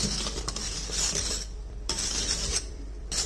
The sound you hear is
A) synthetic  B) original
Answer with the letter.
A